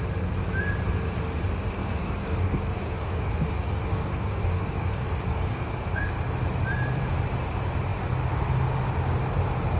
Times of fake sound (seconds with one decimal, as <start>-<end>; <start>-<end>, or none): 1.8-6.2